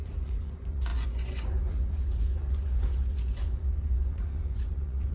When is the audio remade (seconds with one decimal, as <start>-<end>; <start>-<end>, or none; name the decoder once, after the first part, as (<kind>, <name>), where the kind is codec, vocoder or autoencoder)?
0.0-5.1 (vocoder, Vocos)

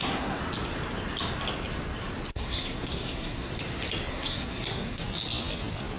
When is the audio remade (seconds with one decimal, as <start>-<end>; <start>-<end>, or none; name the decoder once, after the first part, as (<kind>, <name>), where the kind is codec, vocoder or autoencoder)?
0.0-0.4 (codec, SNAC); 2.3-3.5; 4.1-5.0

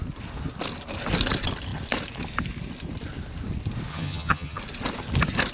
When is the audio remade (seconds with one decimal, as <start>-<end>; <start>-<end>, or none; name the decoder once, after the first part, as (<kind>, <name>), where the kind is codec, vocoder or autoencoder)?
3.9-4.6 (vocoder, HiFi-GAN)